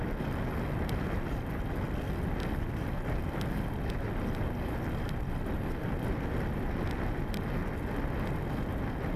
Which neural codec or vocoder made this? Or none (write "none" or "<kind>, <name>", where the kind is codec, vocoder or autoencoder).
none